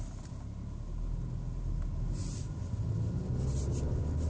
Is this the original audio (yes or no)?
yes